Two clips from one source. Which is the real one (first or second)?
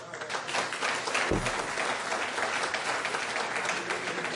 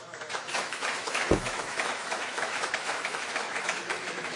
first